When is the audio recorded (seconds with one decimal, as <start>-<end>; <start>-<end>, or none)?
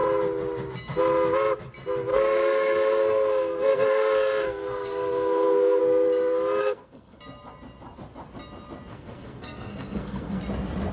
0.0-2.1; 5.8-6.6; 7.2-8.9; 10.4-10.9